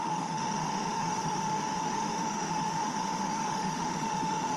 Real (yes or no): no